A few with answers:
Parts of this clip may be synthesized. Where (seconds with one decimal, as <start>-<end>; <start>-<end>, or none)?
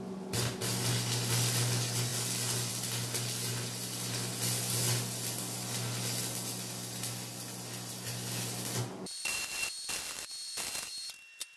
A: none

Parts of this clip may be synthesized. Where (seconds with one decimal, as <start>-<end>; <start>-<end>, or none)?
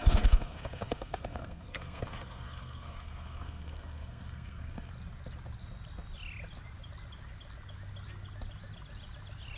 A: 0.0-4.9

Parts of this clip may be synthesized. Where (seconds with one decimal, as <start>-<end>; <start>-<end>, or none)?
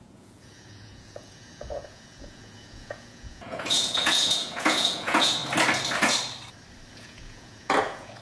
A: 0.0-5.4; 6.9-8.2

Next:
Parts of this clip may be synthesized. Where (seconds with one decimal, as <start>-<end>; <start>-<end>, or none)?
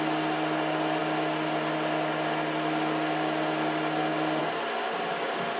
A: none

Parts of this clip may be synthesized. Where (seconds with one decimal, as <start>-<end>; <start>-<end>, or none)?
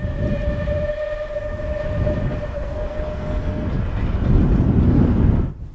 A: 2.5-3.7